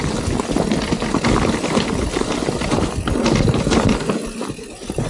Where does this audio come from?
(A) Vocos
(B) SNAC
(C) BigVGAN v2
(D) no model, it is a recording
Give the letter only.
D